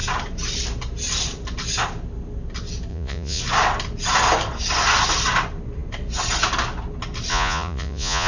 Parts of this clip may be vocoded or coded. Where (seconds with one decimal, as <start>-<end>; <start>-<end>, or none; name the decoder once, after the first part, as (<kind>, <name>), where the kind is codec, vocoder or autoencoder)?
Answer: 2.9-3.4 (vocoder, Vocos); 7.3-8.3